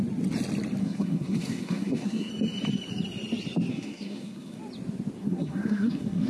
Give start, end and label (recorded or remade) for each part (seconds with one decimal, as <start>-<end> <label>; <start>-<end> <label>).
0.0-0.8 recorded; 0.8-2.3 remade; 2.3-3.7 recorded; 3.7-4.6 remade; 4.6-5.2 recorded; 5.2-6.3 remade